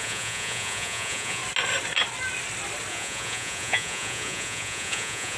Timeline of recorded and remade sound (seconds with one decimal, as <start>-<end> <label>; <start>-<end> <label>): 0.0-1.4 remade; 1.4-2.9 recorded; 2.9-5.4 remade